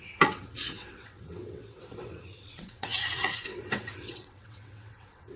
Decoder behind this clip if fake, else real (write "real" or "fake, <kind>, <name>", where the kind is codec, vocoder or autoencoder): fake, vocoder, WaveNeXt